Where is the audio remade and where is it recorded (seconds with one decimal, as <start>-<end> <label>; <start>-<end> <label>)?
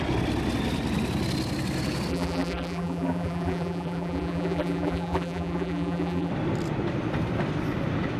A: 0.0-2.1 recorded; 2.1-6.3 remade; 6.3-8.2 recorded